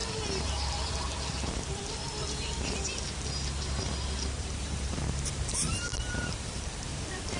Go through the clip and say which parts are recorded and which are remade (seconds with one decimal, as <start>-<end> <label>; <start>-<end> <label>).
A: 0.0-4.4 recorded; 4.4-6.9 remade; 6.9-7.4 recorded